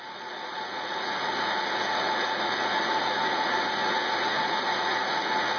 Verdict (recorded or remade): remade